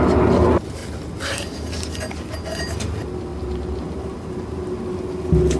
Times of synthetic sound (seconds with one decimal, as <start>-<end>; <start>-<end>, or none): none